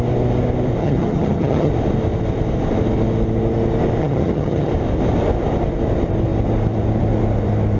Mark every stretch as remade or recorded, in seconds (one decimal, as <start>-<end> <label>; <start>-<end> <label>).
0.0-0.8 recorded; 0.8-1.7 remade; 1.7-4.0 recorded; 4.0-4.7 remade; 4.7-7.8 recorded

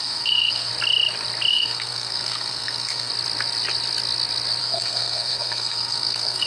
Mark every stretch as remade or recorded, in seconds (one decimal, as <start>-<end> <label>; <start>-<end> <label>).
0.0-0.7 remade; 0.7-1.5 recorded; 1.5-3.1 remade; 3.1-4.6 recorded; 4.6-6.5 remade

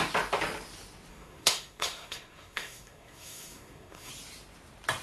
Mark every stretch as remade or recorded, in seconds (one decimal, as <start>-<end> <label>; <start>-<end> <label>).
0.0-1.1 recorded; 1.1-4.1 remade; 4.1-5.0 recorded

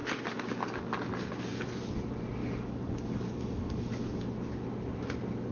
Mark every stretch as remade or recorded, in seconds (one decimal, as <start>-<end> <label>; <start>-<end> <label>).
0.0-2.4 recorded; 2.4-4.2 remade; 4.2-5.5 recorded

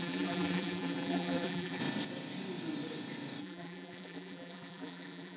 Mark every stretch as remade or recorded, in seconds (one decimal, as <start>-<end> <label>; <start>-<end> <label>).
0.0-1.8 remade; 1.8-3.4 recorded; 3.4-5.4 remade